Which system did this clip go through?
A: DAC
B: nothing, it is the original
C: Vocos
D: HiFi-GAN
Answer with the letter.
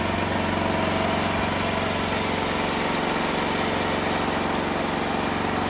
B